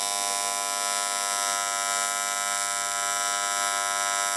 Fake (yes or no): no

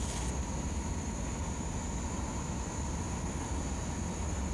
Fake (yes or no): no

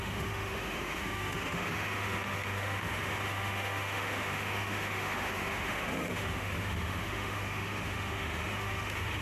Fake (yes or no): yes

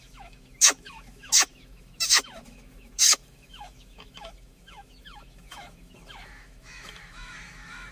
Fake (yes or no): yes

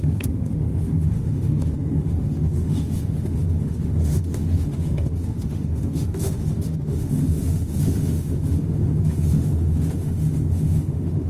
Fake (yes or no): yes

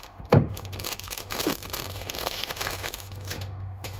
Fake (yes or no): yes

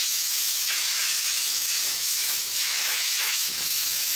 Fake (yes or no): yes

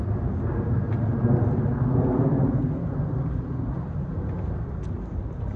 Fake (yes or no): no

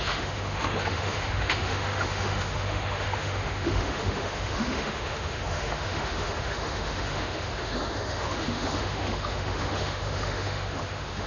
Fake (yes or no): yes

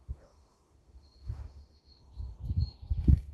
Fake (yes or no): yes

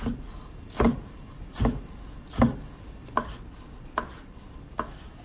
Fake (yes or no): no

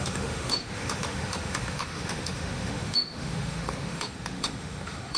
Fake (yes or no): yes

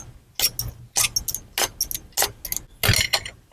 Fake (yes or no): no